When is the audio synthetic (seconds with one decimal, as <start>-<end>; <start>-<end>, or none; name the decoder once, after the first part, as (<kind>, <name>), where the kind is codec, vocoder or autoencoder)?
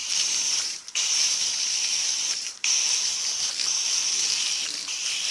0.0-3.2 (vocoder, BigVGAN v2)